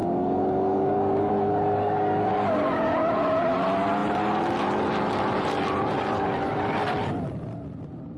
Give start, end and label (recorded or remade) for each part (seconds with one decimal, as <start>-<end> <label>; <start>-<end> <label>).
0.0-1.3 remade; 1.3-1.8 recorded; 1.8-2.3 remade; 2.3-8.2 recorded